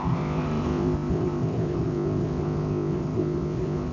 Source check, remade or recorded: remade